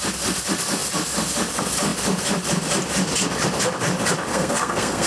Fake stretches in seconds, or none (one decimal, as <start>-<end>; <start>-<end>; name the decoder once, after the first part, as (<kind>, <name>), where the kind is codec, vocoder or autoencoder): 4.3-5.1 (codec, SNAC)